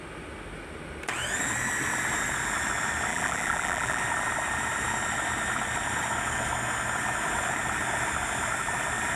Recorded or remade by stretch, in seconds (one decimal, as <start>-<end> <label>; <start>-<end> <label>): 0.0-3.1 recorded; 3.1-4.0 remade; 4.0-9.2 recorded